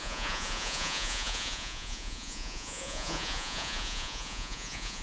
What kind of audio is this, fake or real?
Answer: fake